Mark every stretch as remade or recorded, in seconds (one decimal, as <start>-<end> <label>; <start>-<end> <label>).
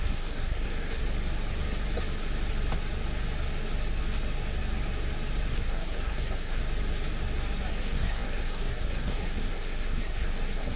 0.0-1.0 remade; 1.0-5.5 recorded; 5.5-6.6 remade; 6.6-7.7 recorded; 7.7-10.8 remade